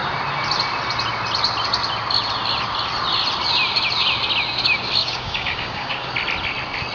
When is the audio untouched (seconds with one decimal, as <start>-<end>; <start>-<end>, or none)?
0.0-5.0; 6.1-6.9